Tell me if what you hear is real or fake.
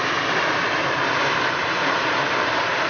real